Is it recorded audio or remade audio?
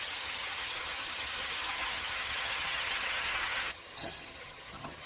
remade